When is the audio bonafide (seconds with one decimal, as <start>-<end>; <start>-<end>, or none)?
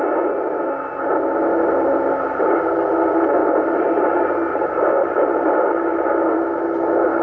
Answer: 0.0-7.2